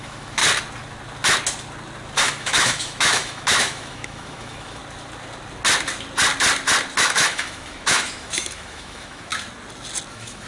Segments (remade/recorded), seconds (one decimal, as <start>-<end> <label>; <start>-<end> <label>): 0.0-0.4 remade; 0.4-2.2 recorded; 2.2-4.8 remade; 4.8-7.0 recorded; 7.0-9.3 remade; 9.3-10.1 recorded; 10.1-10.5 remade

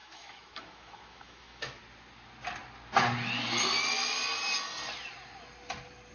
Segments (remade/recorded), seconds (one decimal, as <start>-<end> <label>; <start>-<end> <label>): 0.0-1.7 remade; 1.7-6.1 recorded

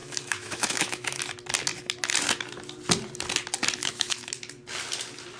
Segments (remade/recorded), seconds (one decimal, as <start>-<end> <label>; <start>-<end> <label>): 0.0-1.2 remade; 1.2-3.8 recorded; 3.8-4.3 remade; 4.3-5.4 recorded

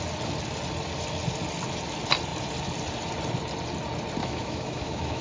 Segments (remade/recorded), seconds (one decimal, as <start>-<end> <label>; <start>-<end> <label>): 0.0-4.2 recorded; 4.2-5.2 remade

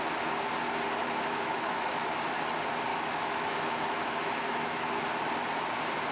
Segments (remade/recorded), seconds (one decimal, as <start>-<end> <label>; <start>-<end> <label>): 0.0-1.0 recorded; 1.0-2.1 remade; 2.1-2.9 recorded; 2.9-5.0 remade; 5.0-6.1 recorded

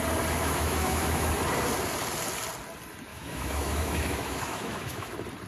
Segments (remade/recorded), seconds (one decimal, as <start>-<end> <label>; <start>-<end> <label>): 0.0-0.4 recorded; 0.4-1.3 remade; 1.3-3.1 recorded; 3.1-5.1 remade; 5.1-5.5 recorded

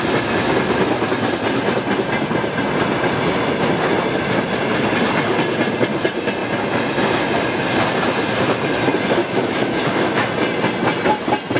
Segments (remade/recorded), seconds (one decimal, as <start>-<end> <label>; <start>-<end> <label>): 0.0-9.2 recorded; 9.2-10.3 remade; 10.3-11.6 recorded